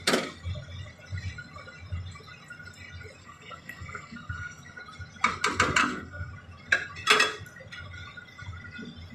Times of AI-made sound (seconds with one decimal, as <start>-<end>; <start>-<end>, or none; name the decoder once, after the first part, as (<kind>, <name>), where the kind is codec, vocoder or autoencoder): 3.2-4.8 (codec, SNAC); 5.8-6.3